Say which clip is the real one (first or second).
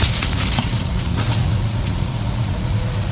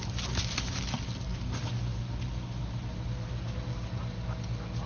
second